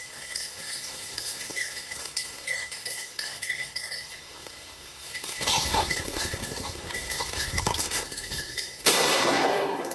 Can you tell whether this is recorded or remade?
remade